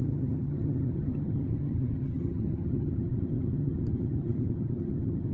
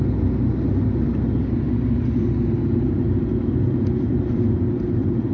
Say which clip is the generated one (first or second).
first